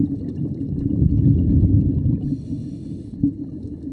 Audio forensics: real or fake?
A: real